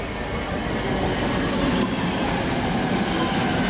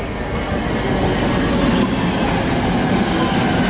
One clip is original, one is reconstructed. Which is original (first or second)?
second